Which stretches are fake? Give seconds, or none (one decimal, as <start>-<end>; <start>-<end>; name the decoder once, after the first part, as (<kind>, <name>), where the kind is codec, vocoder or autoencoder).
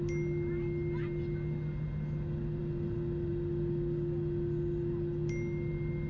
none